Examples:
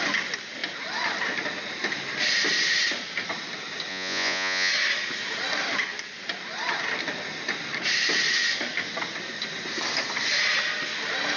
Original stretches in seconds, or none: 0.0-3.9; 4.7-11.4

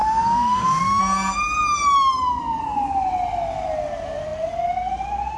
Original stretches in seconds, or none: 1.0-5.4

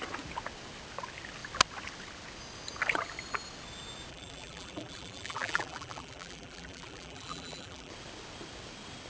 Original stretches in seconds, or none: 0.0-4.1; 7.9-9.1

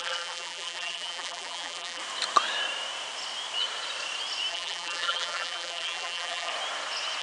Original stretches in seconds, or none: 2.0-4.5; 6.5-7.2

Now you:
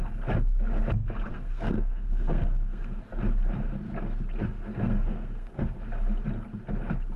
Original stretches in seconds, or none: 0.0-1.3; 3.0-4.4; 5.8-7.2

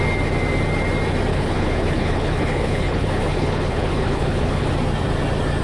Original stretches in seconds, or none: 0.0-1.3; 4.7-5.6

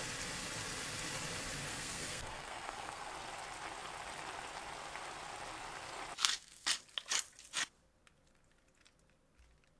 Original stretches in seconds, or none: 0.0-1.7; 3.1-6.2; 6.7-9.8

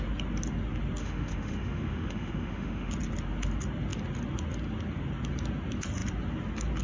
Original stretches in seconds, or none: 0.0-1.0; 2.9-6.8